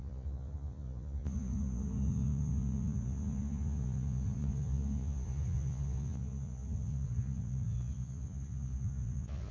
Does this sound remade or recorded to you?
remade